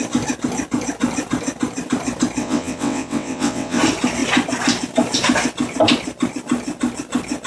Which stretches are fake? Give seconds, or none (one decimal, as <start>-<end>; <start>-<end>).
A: 2.4-3.8